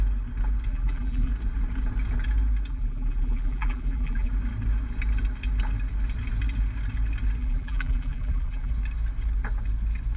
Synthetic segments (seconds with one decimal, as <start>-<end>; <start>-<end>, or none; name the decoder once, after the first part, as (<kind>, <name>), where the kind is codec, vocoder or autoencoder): 0.7-1.3 (vocoder, BigVGAN v2); 2.7-4.3; 7.4-8.7